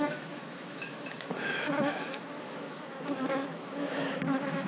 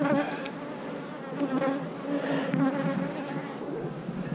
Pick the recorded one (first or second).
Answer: second